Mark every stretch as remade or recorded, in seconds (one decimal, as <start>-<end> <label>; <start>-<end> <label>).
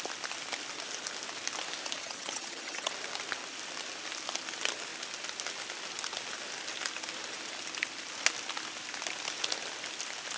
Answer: 0.0-2.0 recorded; 2.0-2.9 remade; 2.9-10.4 recorded